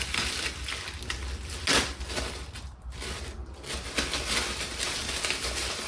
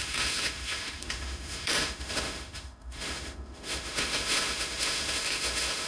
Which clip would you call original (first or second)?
first